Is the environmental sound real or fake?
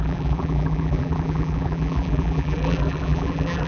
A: fake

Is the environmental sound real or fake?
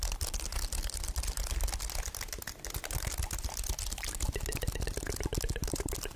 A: real